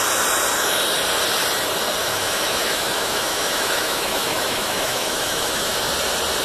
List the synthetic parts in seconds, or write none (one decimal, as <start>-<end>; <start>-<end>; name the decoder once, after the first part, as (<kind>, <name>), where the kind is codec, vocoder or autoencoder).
2.0-5.7 (autoencoder, DAC-VAE)